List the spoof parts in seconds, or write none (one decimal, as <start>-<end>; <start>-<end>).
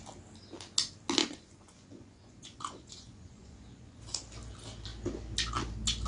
1.2-4.0